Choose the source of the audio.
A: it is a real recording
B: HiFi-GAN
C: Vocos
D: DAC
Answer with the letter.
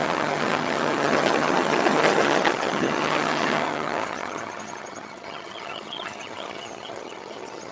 B